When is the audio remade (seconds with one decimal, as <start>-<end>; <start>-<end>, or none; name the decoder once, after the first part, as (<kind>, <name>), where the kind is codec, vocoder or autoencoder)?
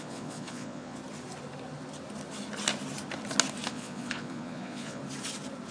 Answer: 0.0-1.0 (vocoder, Vocos); 3.7-5.0